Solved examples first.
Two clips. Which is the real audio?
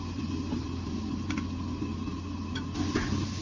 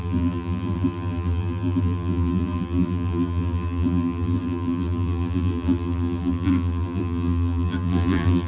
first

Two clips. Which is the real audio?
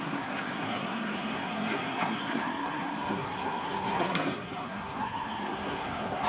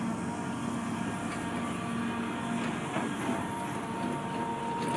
second